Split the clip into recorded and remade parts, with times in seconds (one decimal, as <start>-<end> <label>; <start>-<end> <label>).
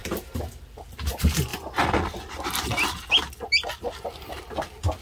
0.0-5.0 recorded